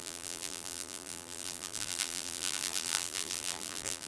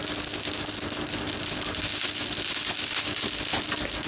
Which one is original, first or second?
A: second